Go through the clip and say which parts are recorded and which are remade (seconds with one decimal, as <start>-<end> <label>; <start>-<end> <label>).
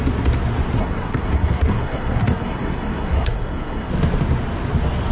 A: 0.0-0.8 recorded; 0.8-3.9 remade; 3.9-5.1 recorded